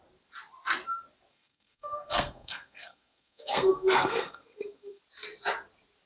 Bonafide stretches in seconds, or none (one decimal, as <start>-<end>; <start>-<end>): 0.0-1.3; 5.0-6.1